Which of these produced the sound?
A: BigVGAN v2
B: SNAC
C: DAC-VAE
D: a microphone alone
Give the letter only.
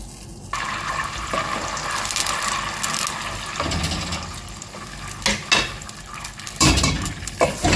D